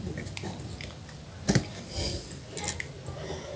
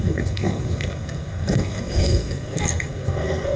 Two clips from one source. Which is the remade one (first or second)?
second